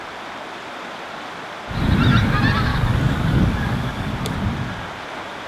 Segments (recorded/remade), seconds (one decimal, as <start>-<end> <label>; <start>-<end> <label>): 0.0-2.7 recorded; 2.7-4.1 remade; 4.1-5.5 recorded